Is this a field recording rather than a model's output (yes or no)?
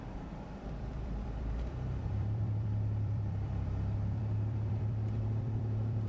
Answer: no